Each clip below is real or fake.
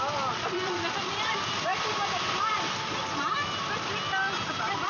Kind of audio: real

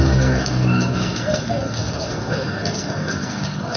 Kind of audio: fake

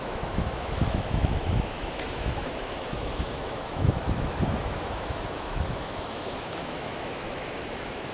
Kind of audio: fake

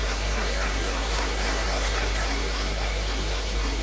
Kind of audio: fake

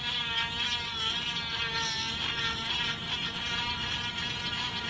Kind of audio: real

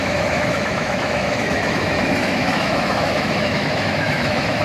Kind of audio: fake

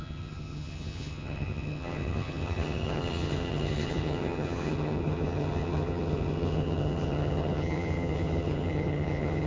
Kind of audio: fake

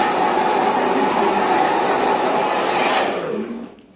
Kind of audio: real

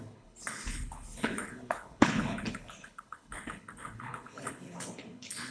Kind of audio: fake